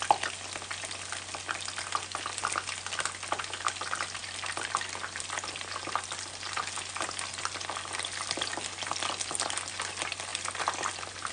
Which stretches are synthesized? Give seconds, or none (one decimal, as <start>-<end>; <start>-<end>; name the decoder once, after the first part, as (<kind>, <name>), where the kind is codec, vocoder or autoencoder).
none